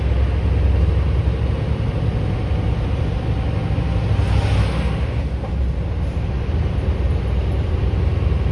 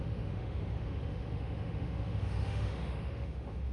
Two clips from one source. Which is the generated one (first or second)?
second